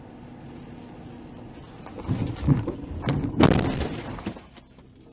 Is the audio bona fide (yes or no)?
yes